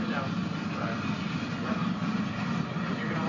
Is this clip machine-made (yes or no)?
no